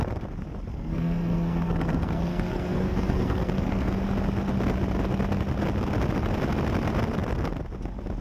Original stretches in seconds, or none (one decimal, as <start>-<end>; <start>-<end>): 0.0-0.7; 3.9-8.2